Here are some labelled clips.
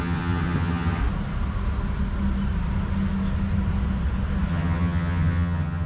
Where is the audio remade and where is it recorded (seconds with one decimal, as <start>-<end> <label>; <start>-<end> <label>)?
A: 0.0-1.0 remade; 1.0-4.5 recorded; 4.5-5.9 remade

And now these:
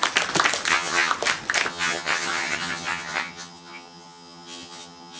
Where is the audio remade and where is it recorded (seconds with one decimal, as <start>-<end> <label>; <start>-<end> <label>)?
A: 0.0-0.7 recorded; 0.7-1.1 remade; 1.1-1.7 recorded; 1.7-5.2 remade

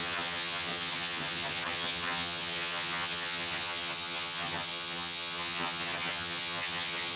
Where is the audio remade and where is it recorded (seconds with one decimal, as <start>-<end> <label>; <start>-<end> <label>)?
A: 0.0-7.2 remade

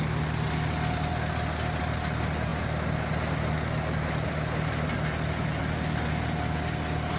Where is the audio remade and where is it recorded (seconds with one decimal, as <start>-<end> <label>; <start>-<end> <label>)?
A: 0.0-7.2 recorded

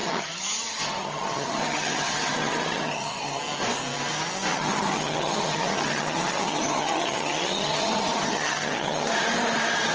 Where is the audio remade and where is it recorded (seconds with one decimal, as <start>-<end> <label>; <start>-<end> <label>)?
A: 0.0-3.4 remade; 3.4-4.5 recorded; 4.5-9.1 remade; 9.1-9.9 recorded

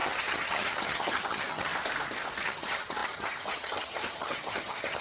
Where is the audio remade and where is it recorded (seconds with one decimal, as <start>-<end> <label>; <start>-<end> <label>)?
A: 0.0-1.7 remade; 1.7-2.4 recorded; 2.4-5.0 remade

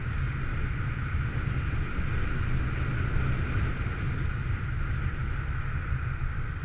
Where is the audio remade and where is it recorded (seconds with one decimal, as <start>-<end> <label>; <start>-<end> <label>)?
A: 0.0-6.6 recorded